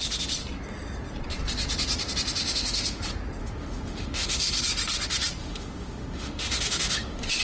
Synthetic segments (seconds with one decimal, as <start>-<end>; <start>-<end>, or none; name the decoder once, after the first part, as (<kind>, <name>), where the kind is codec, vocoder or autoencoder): 2.4-3.0 (autoencoder, DAC-VAE); 3.4-4.6; 5.4-7.4